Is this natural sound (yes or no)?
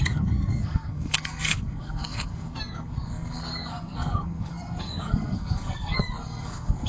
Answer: no